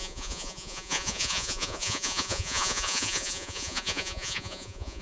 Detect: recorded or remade remade